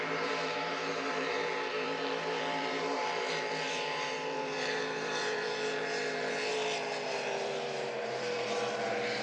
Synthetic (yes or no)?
yes